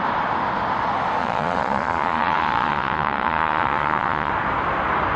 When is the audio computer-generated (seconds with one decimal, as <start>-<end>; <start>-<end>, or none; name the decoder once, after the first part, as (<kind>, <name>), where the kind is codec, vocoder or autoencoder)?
1.2-4.3 (vocoder, Vocos)